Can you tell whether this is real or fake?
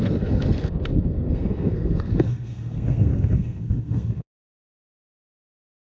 fake